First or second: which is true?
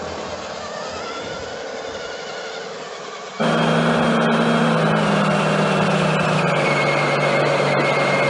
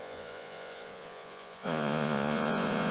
first